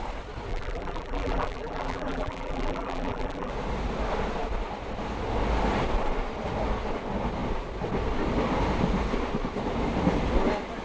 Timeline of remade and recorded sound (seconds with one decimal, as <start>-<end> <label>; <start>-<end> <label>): 0.0-0.5 recorded; 0.5-3.5 remade; 3.5-10.8 recorded